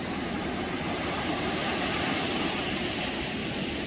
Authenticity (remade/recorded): remade